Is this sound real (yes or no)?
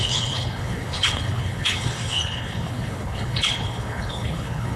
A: no